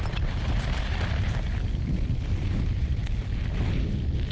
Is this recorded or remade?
recorded